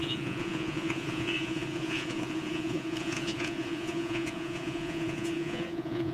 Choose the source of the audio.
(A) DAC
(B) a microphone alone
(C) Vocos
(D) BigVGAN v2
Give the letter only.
C